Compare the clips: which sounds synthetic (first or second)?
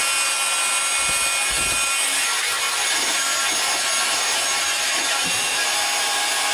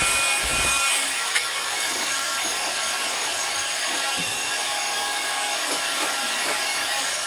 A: second